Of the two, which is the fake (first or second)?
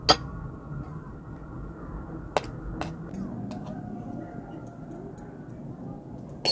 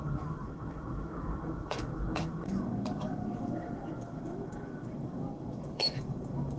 second